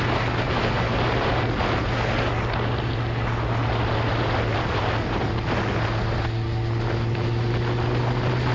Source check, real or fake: real